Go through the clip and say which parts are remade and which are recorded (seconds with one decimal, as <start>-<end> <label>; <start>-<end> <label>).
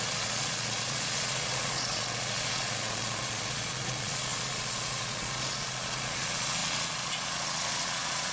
0.0-8.3 remade